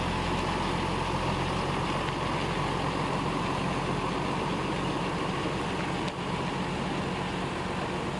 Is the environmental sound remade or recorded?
recorded